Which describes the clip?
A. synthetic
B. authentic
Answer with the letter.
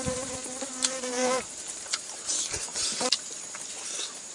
A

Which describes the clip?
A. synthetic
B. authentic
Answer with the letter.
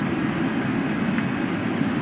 B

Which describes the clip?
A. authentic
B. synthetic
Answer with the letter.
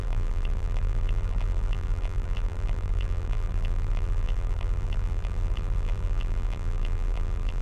B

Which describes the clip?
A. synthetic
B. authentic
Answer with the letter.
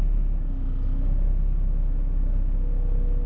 B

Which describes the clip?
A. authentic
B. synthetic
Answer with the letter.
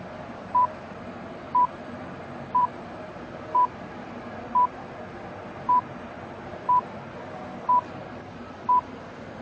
B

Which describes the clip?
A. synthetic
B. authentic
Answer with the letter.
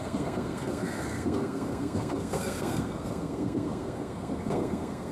A